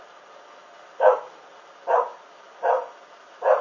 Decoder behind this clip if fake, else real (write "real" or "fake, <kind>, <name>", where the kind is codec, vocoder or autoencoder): real